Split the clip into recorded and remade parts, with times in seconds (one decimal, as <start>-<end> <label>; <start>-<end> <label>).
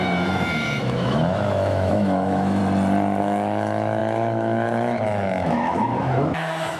0.0-2.6 remade; 2.6-3.2 recorded; 3.2-6.8 remade